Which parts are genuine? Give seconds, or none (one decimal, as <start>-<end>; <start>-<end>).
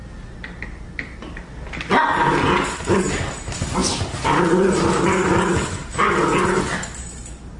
0.0-7.6